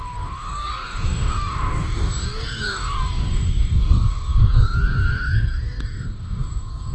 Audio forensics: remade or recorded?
remade